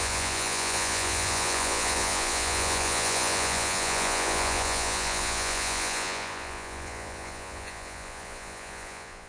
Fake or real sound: fake